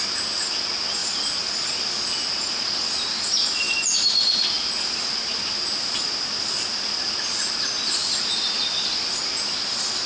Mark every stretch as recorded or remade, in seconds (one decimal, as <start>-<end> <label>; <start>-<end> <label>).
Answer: 0.0-1.0 recorded; 1.0-2.3 remade; 2.3-8.0 recorded; 8.0-10.1 remade